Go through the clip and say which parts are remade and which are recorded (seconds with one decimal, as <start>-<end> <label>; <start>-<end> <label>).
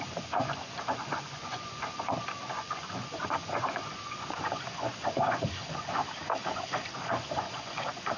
0.0-6.0 remade; 6.0-6.5 recorded; 6.5-8.2 remade